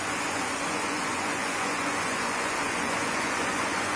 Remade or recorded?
remade